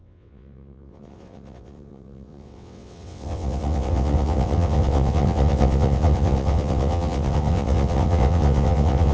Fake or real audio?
fake